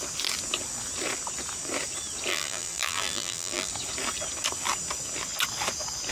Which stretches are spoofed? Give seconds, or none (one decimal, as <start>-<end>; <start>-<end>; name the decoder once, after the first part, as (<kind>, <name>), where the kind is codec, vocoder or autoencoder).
2.3-3.7 (vocoder, BigVGAN v2)